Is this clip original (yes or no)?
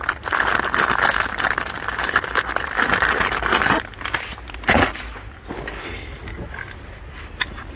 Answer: yes